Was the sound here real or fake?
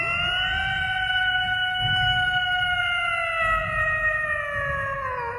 real